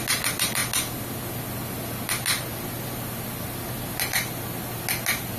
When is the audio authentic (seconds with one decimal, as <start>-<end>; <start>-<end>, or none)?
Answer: 0.0-5.4